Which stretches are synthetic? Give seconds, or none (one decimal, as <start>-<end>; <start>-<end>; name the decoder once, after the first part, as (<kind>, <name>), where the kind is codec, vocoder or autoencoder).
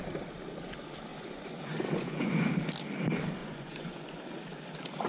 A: 1.1-2.5 (vocoder, Vocos); 3.4-4.2